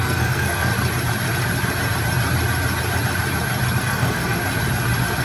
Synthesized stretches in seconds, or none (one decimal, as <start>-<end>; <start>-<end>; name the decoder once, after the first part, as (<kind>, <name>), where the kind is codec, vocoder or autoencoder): 0.0-0.7 (codec, SNAC); 3.8-4.4